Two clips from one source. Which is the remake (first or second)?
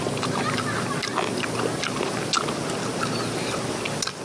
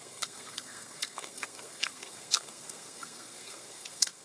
second